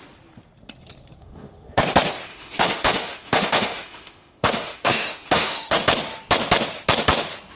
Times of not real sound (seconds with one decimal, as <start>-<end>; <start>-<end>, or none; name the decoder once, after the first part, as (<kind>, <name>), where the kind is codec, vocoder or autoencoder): 1.2-1.8 (autoencoder, DAC-VAE); 2.3-5.8

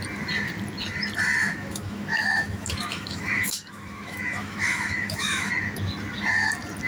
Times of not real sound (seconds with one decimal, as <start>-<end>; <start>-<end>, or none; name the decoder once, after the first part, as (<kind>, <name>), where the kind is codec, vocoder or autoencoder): 1.4-5.5 (autoencoder, DAC-VAE)

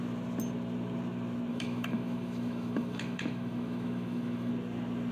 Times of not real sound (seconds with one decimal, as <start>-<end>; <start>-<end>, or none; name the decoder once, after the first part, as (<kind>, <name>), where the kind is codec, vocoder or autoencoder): 1.5-4.5 (autoencoder, DAC-VAE)

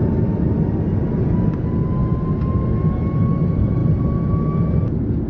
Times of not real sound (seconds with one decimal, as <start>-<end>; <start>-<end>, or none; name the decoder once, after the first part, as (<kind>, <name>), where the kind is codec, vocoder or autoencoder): none

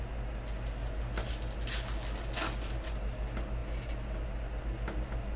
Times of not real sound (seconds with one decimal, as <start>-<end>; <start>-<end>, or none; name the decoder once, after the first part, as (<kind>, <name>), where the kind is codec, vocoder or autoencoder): none

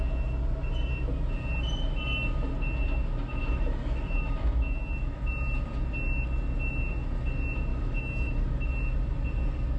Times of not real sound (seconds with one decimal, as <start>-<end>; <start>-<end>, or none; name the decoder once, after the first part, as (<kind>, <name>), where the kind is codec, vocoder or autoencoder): 3.4-5.2 (autoencoder, DAC-VAE); 7.7-8.7

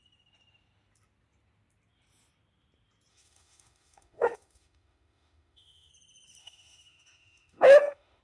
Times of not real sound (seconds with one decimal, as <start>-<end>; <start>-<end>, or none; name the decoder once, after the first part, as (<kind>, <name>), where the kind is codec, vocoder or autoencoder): 3.1-5.9 (autoencoder, DAC-VAE); 6.4-8.2